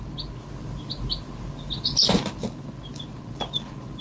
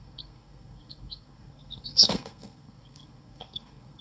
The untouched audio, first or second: first